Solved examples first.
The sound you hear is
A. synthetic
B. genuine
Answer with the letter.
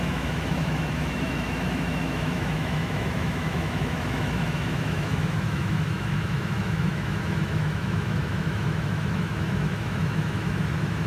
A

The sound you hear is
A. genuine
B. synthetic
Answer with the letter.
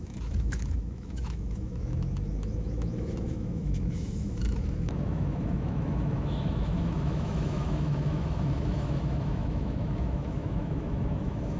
B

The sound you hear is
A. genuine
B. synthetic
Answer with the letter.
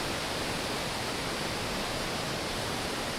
A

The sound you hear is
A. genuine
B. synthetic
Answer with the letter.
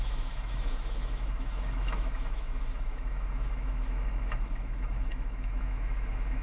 B